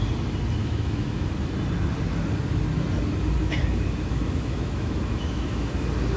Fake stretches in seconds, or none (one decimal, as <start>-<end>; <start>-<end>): 0.6-1.3; 3.4-5.7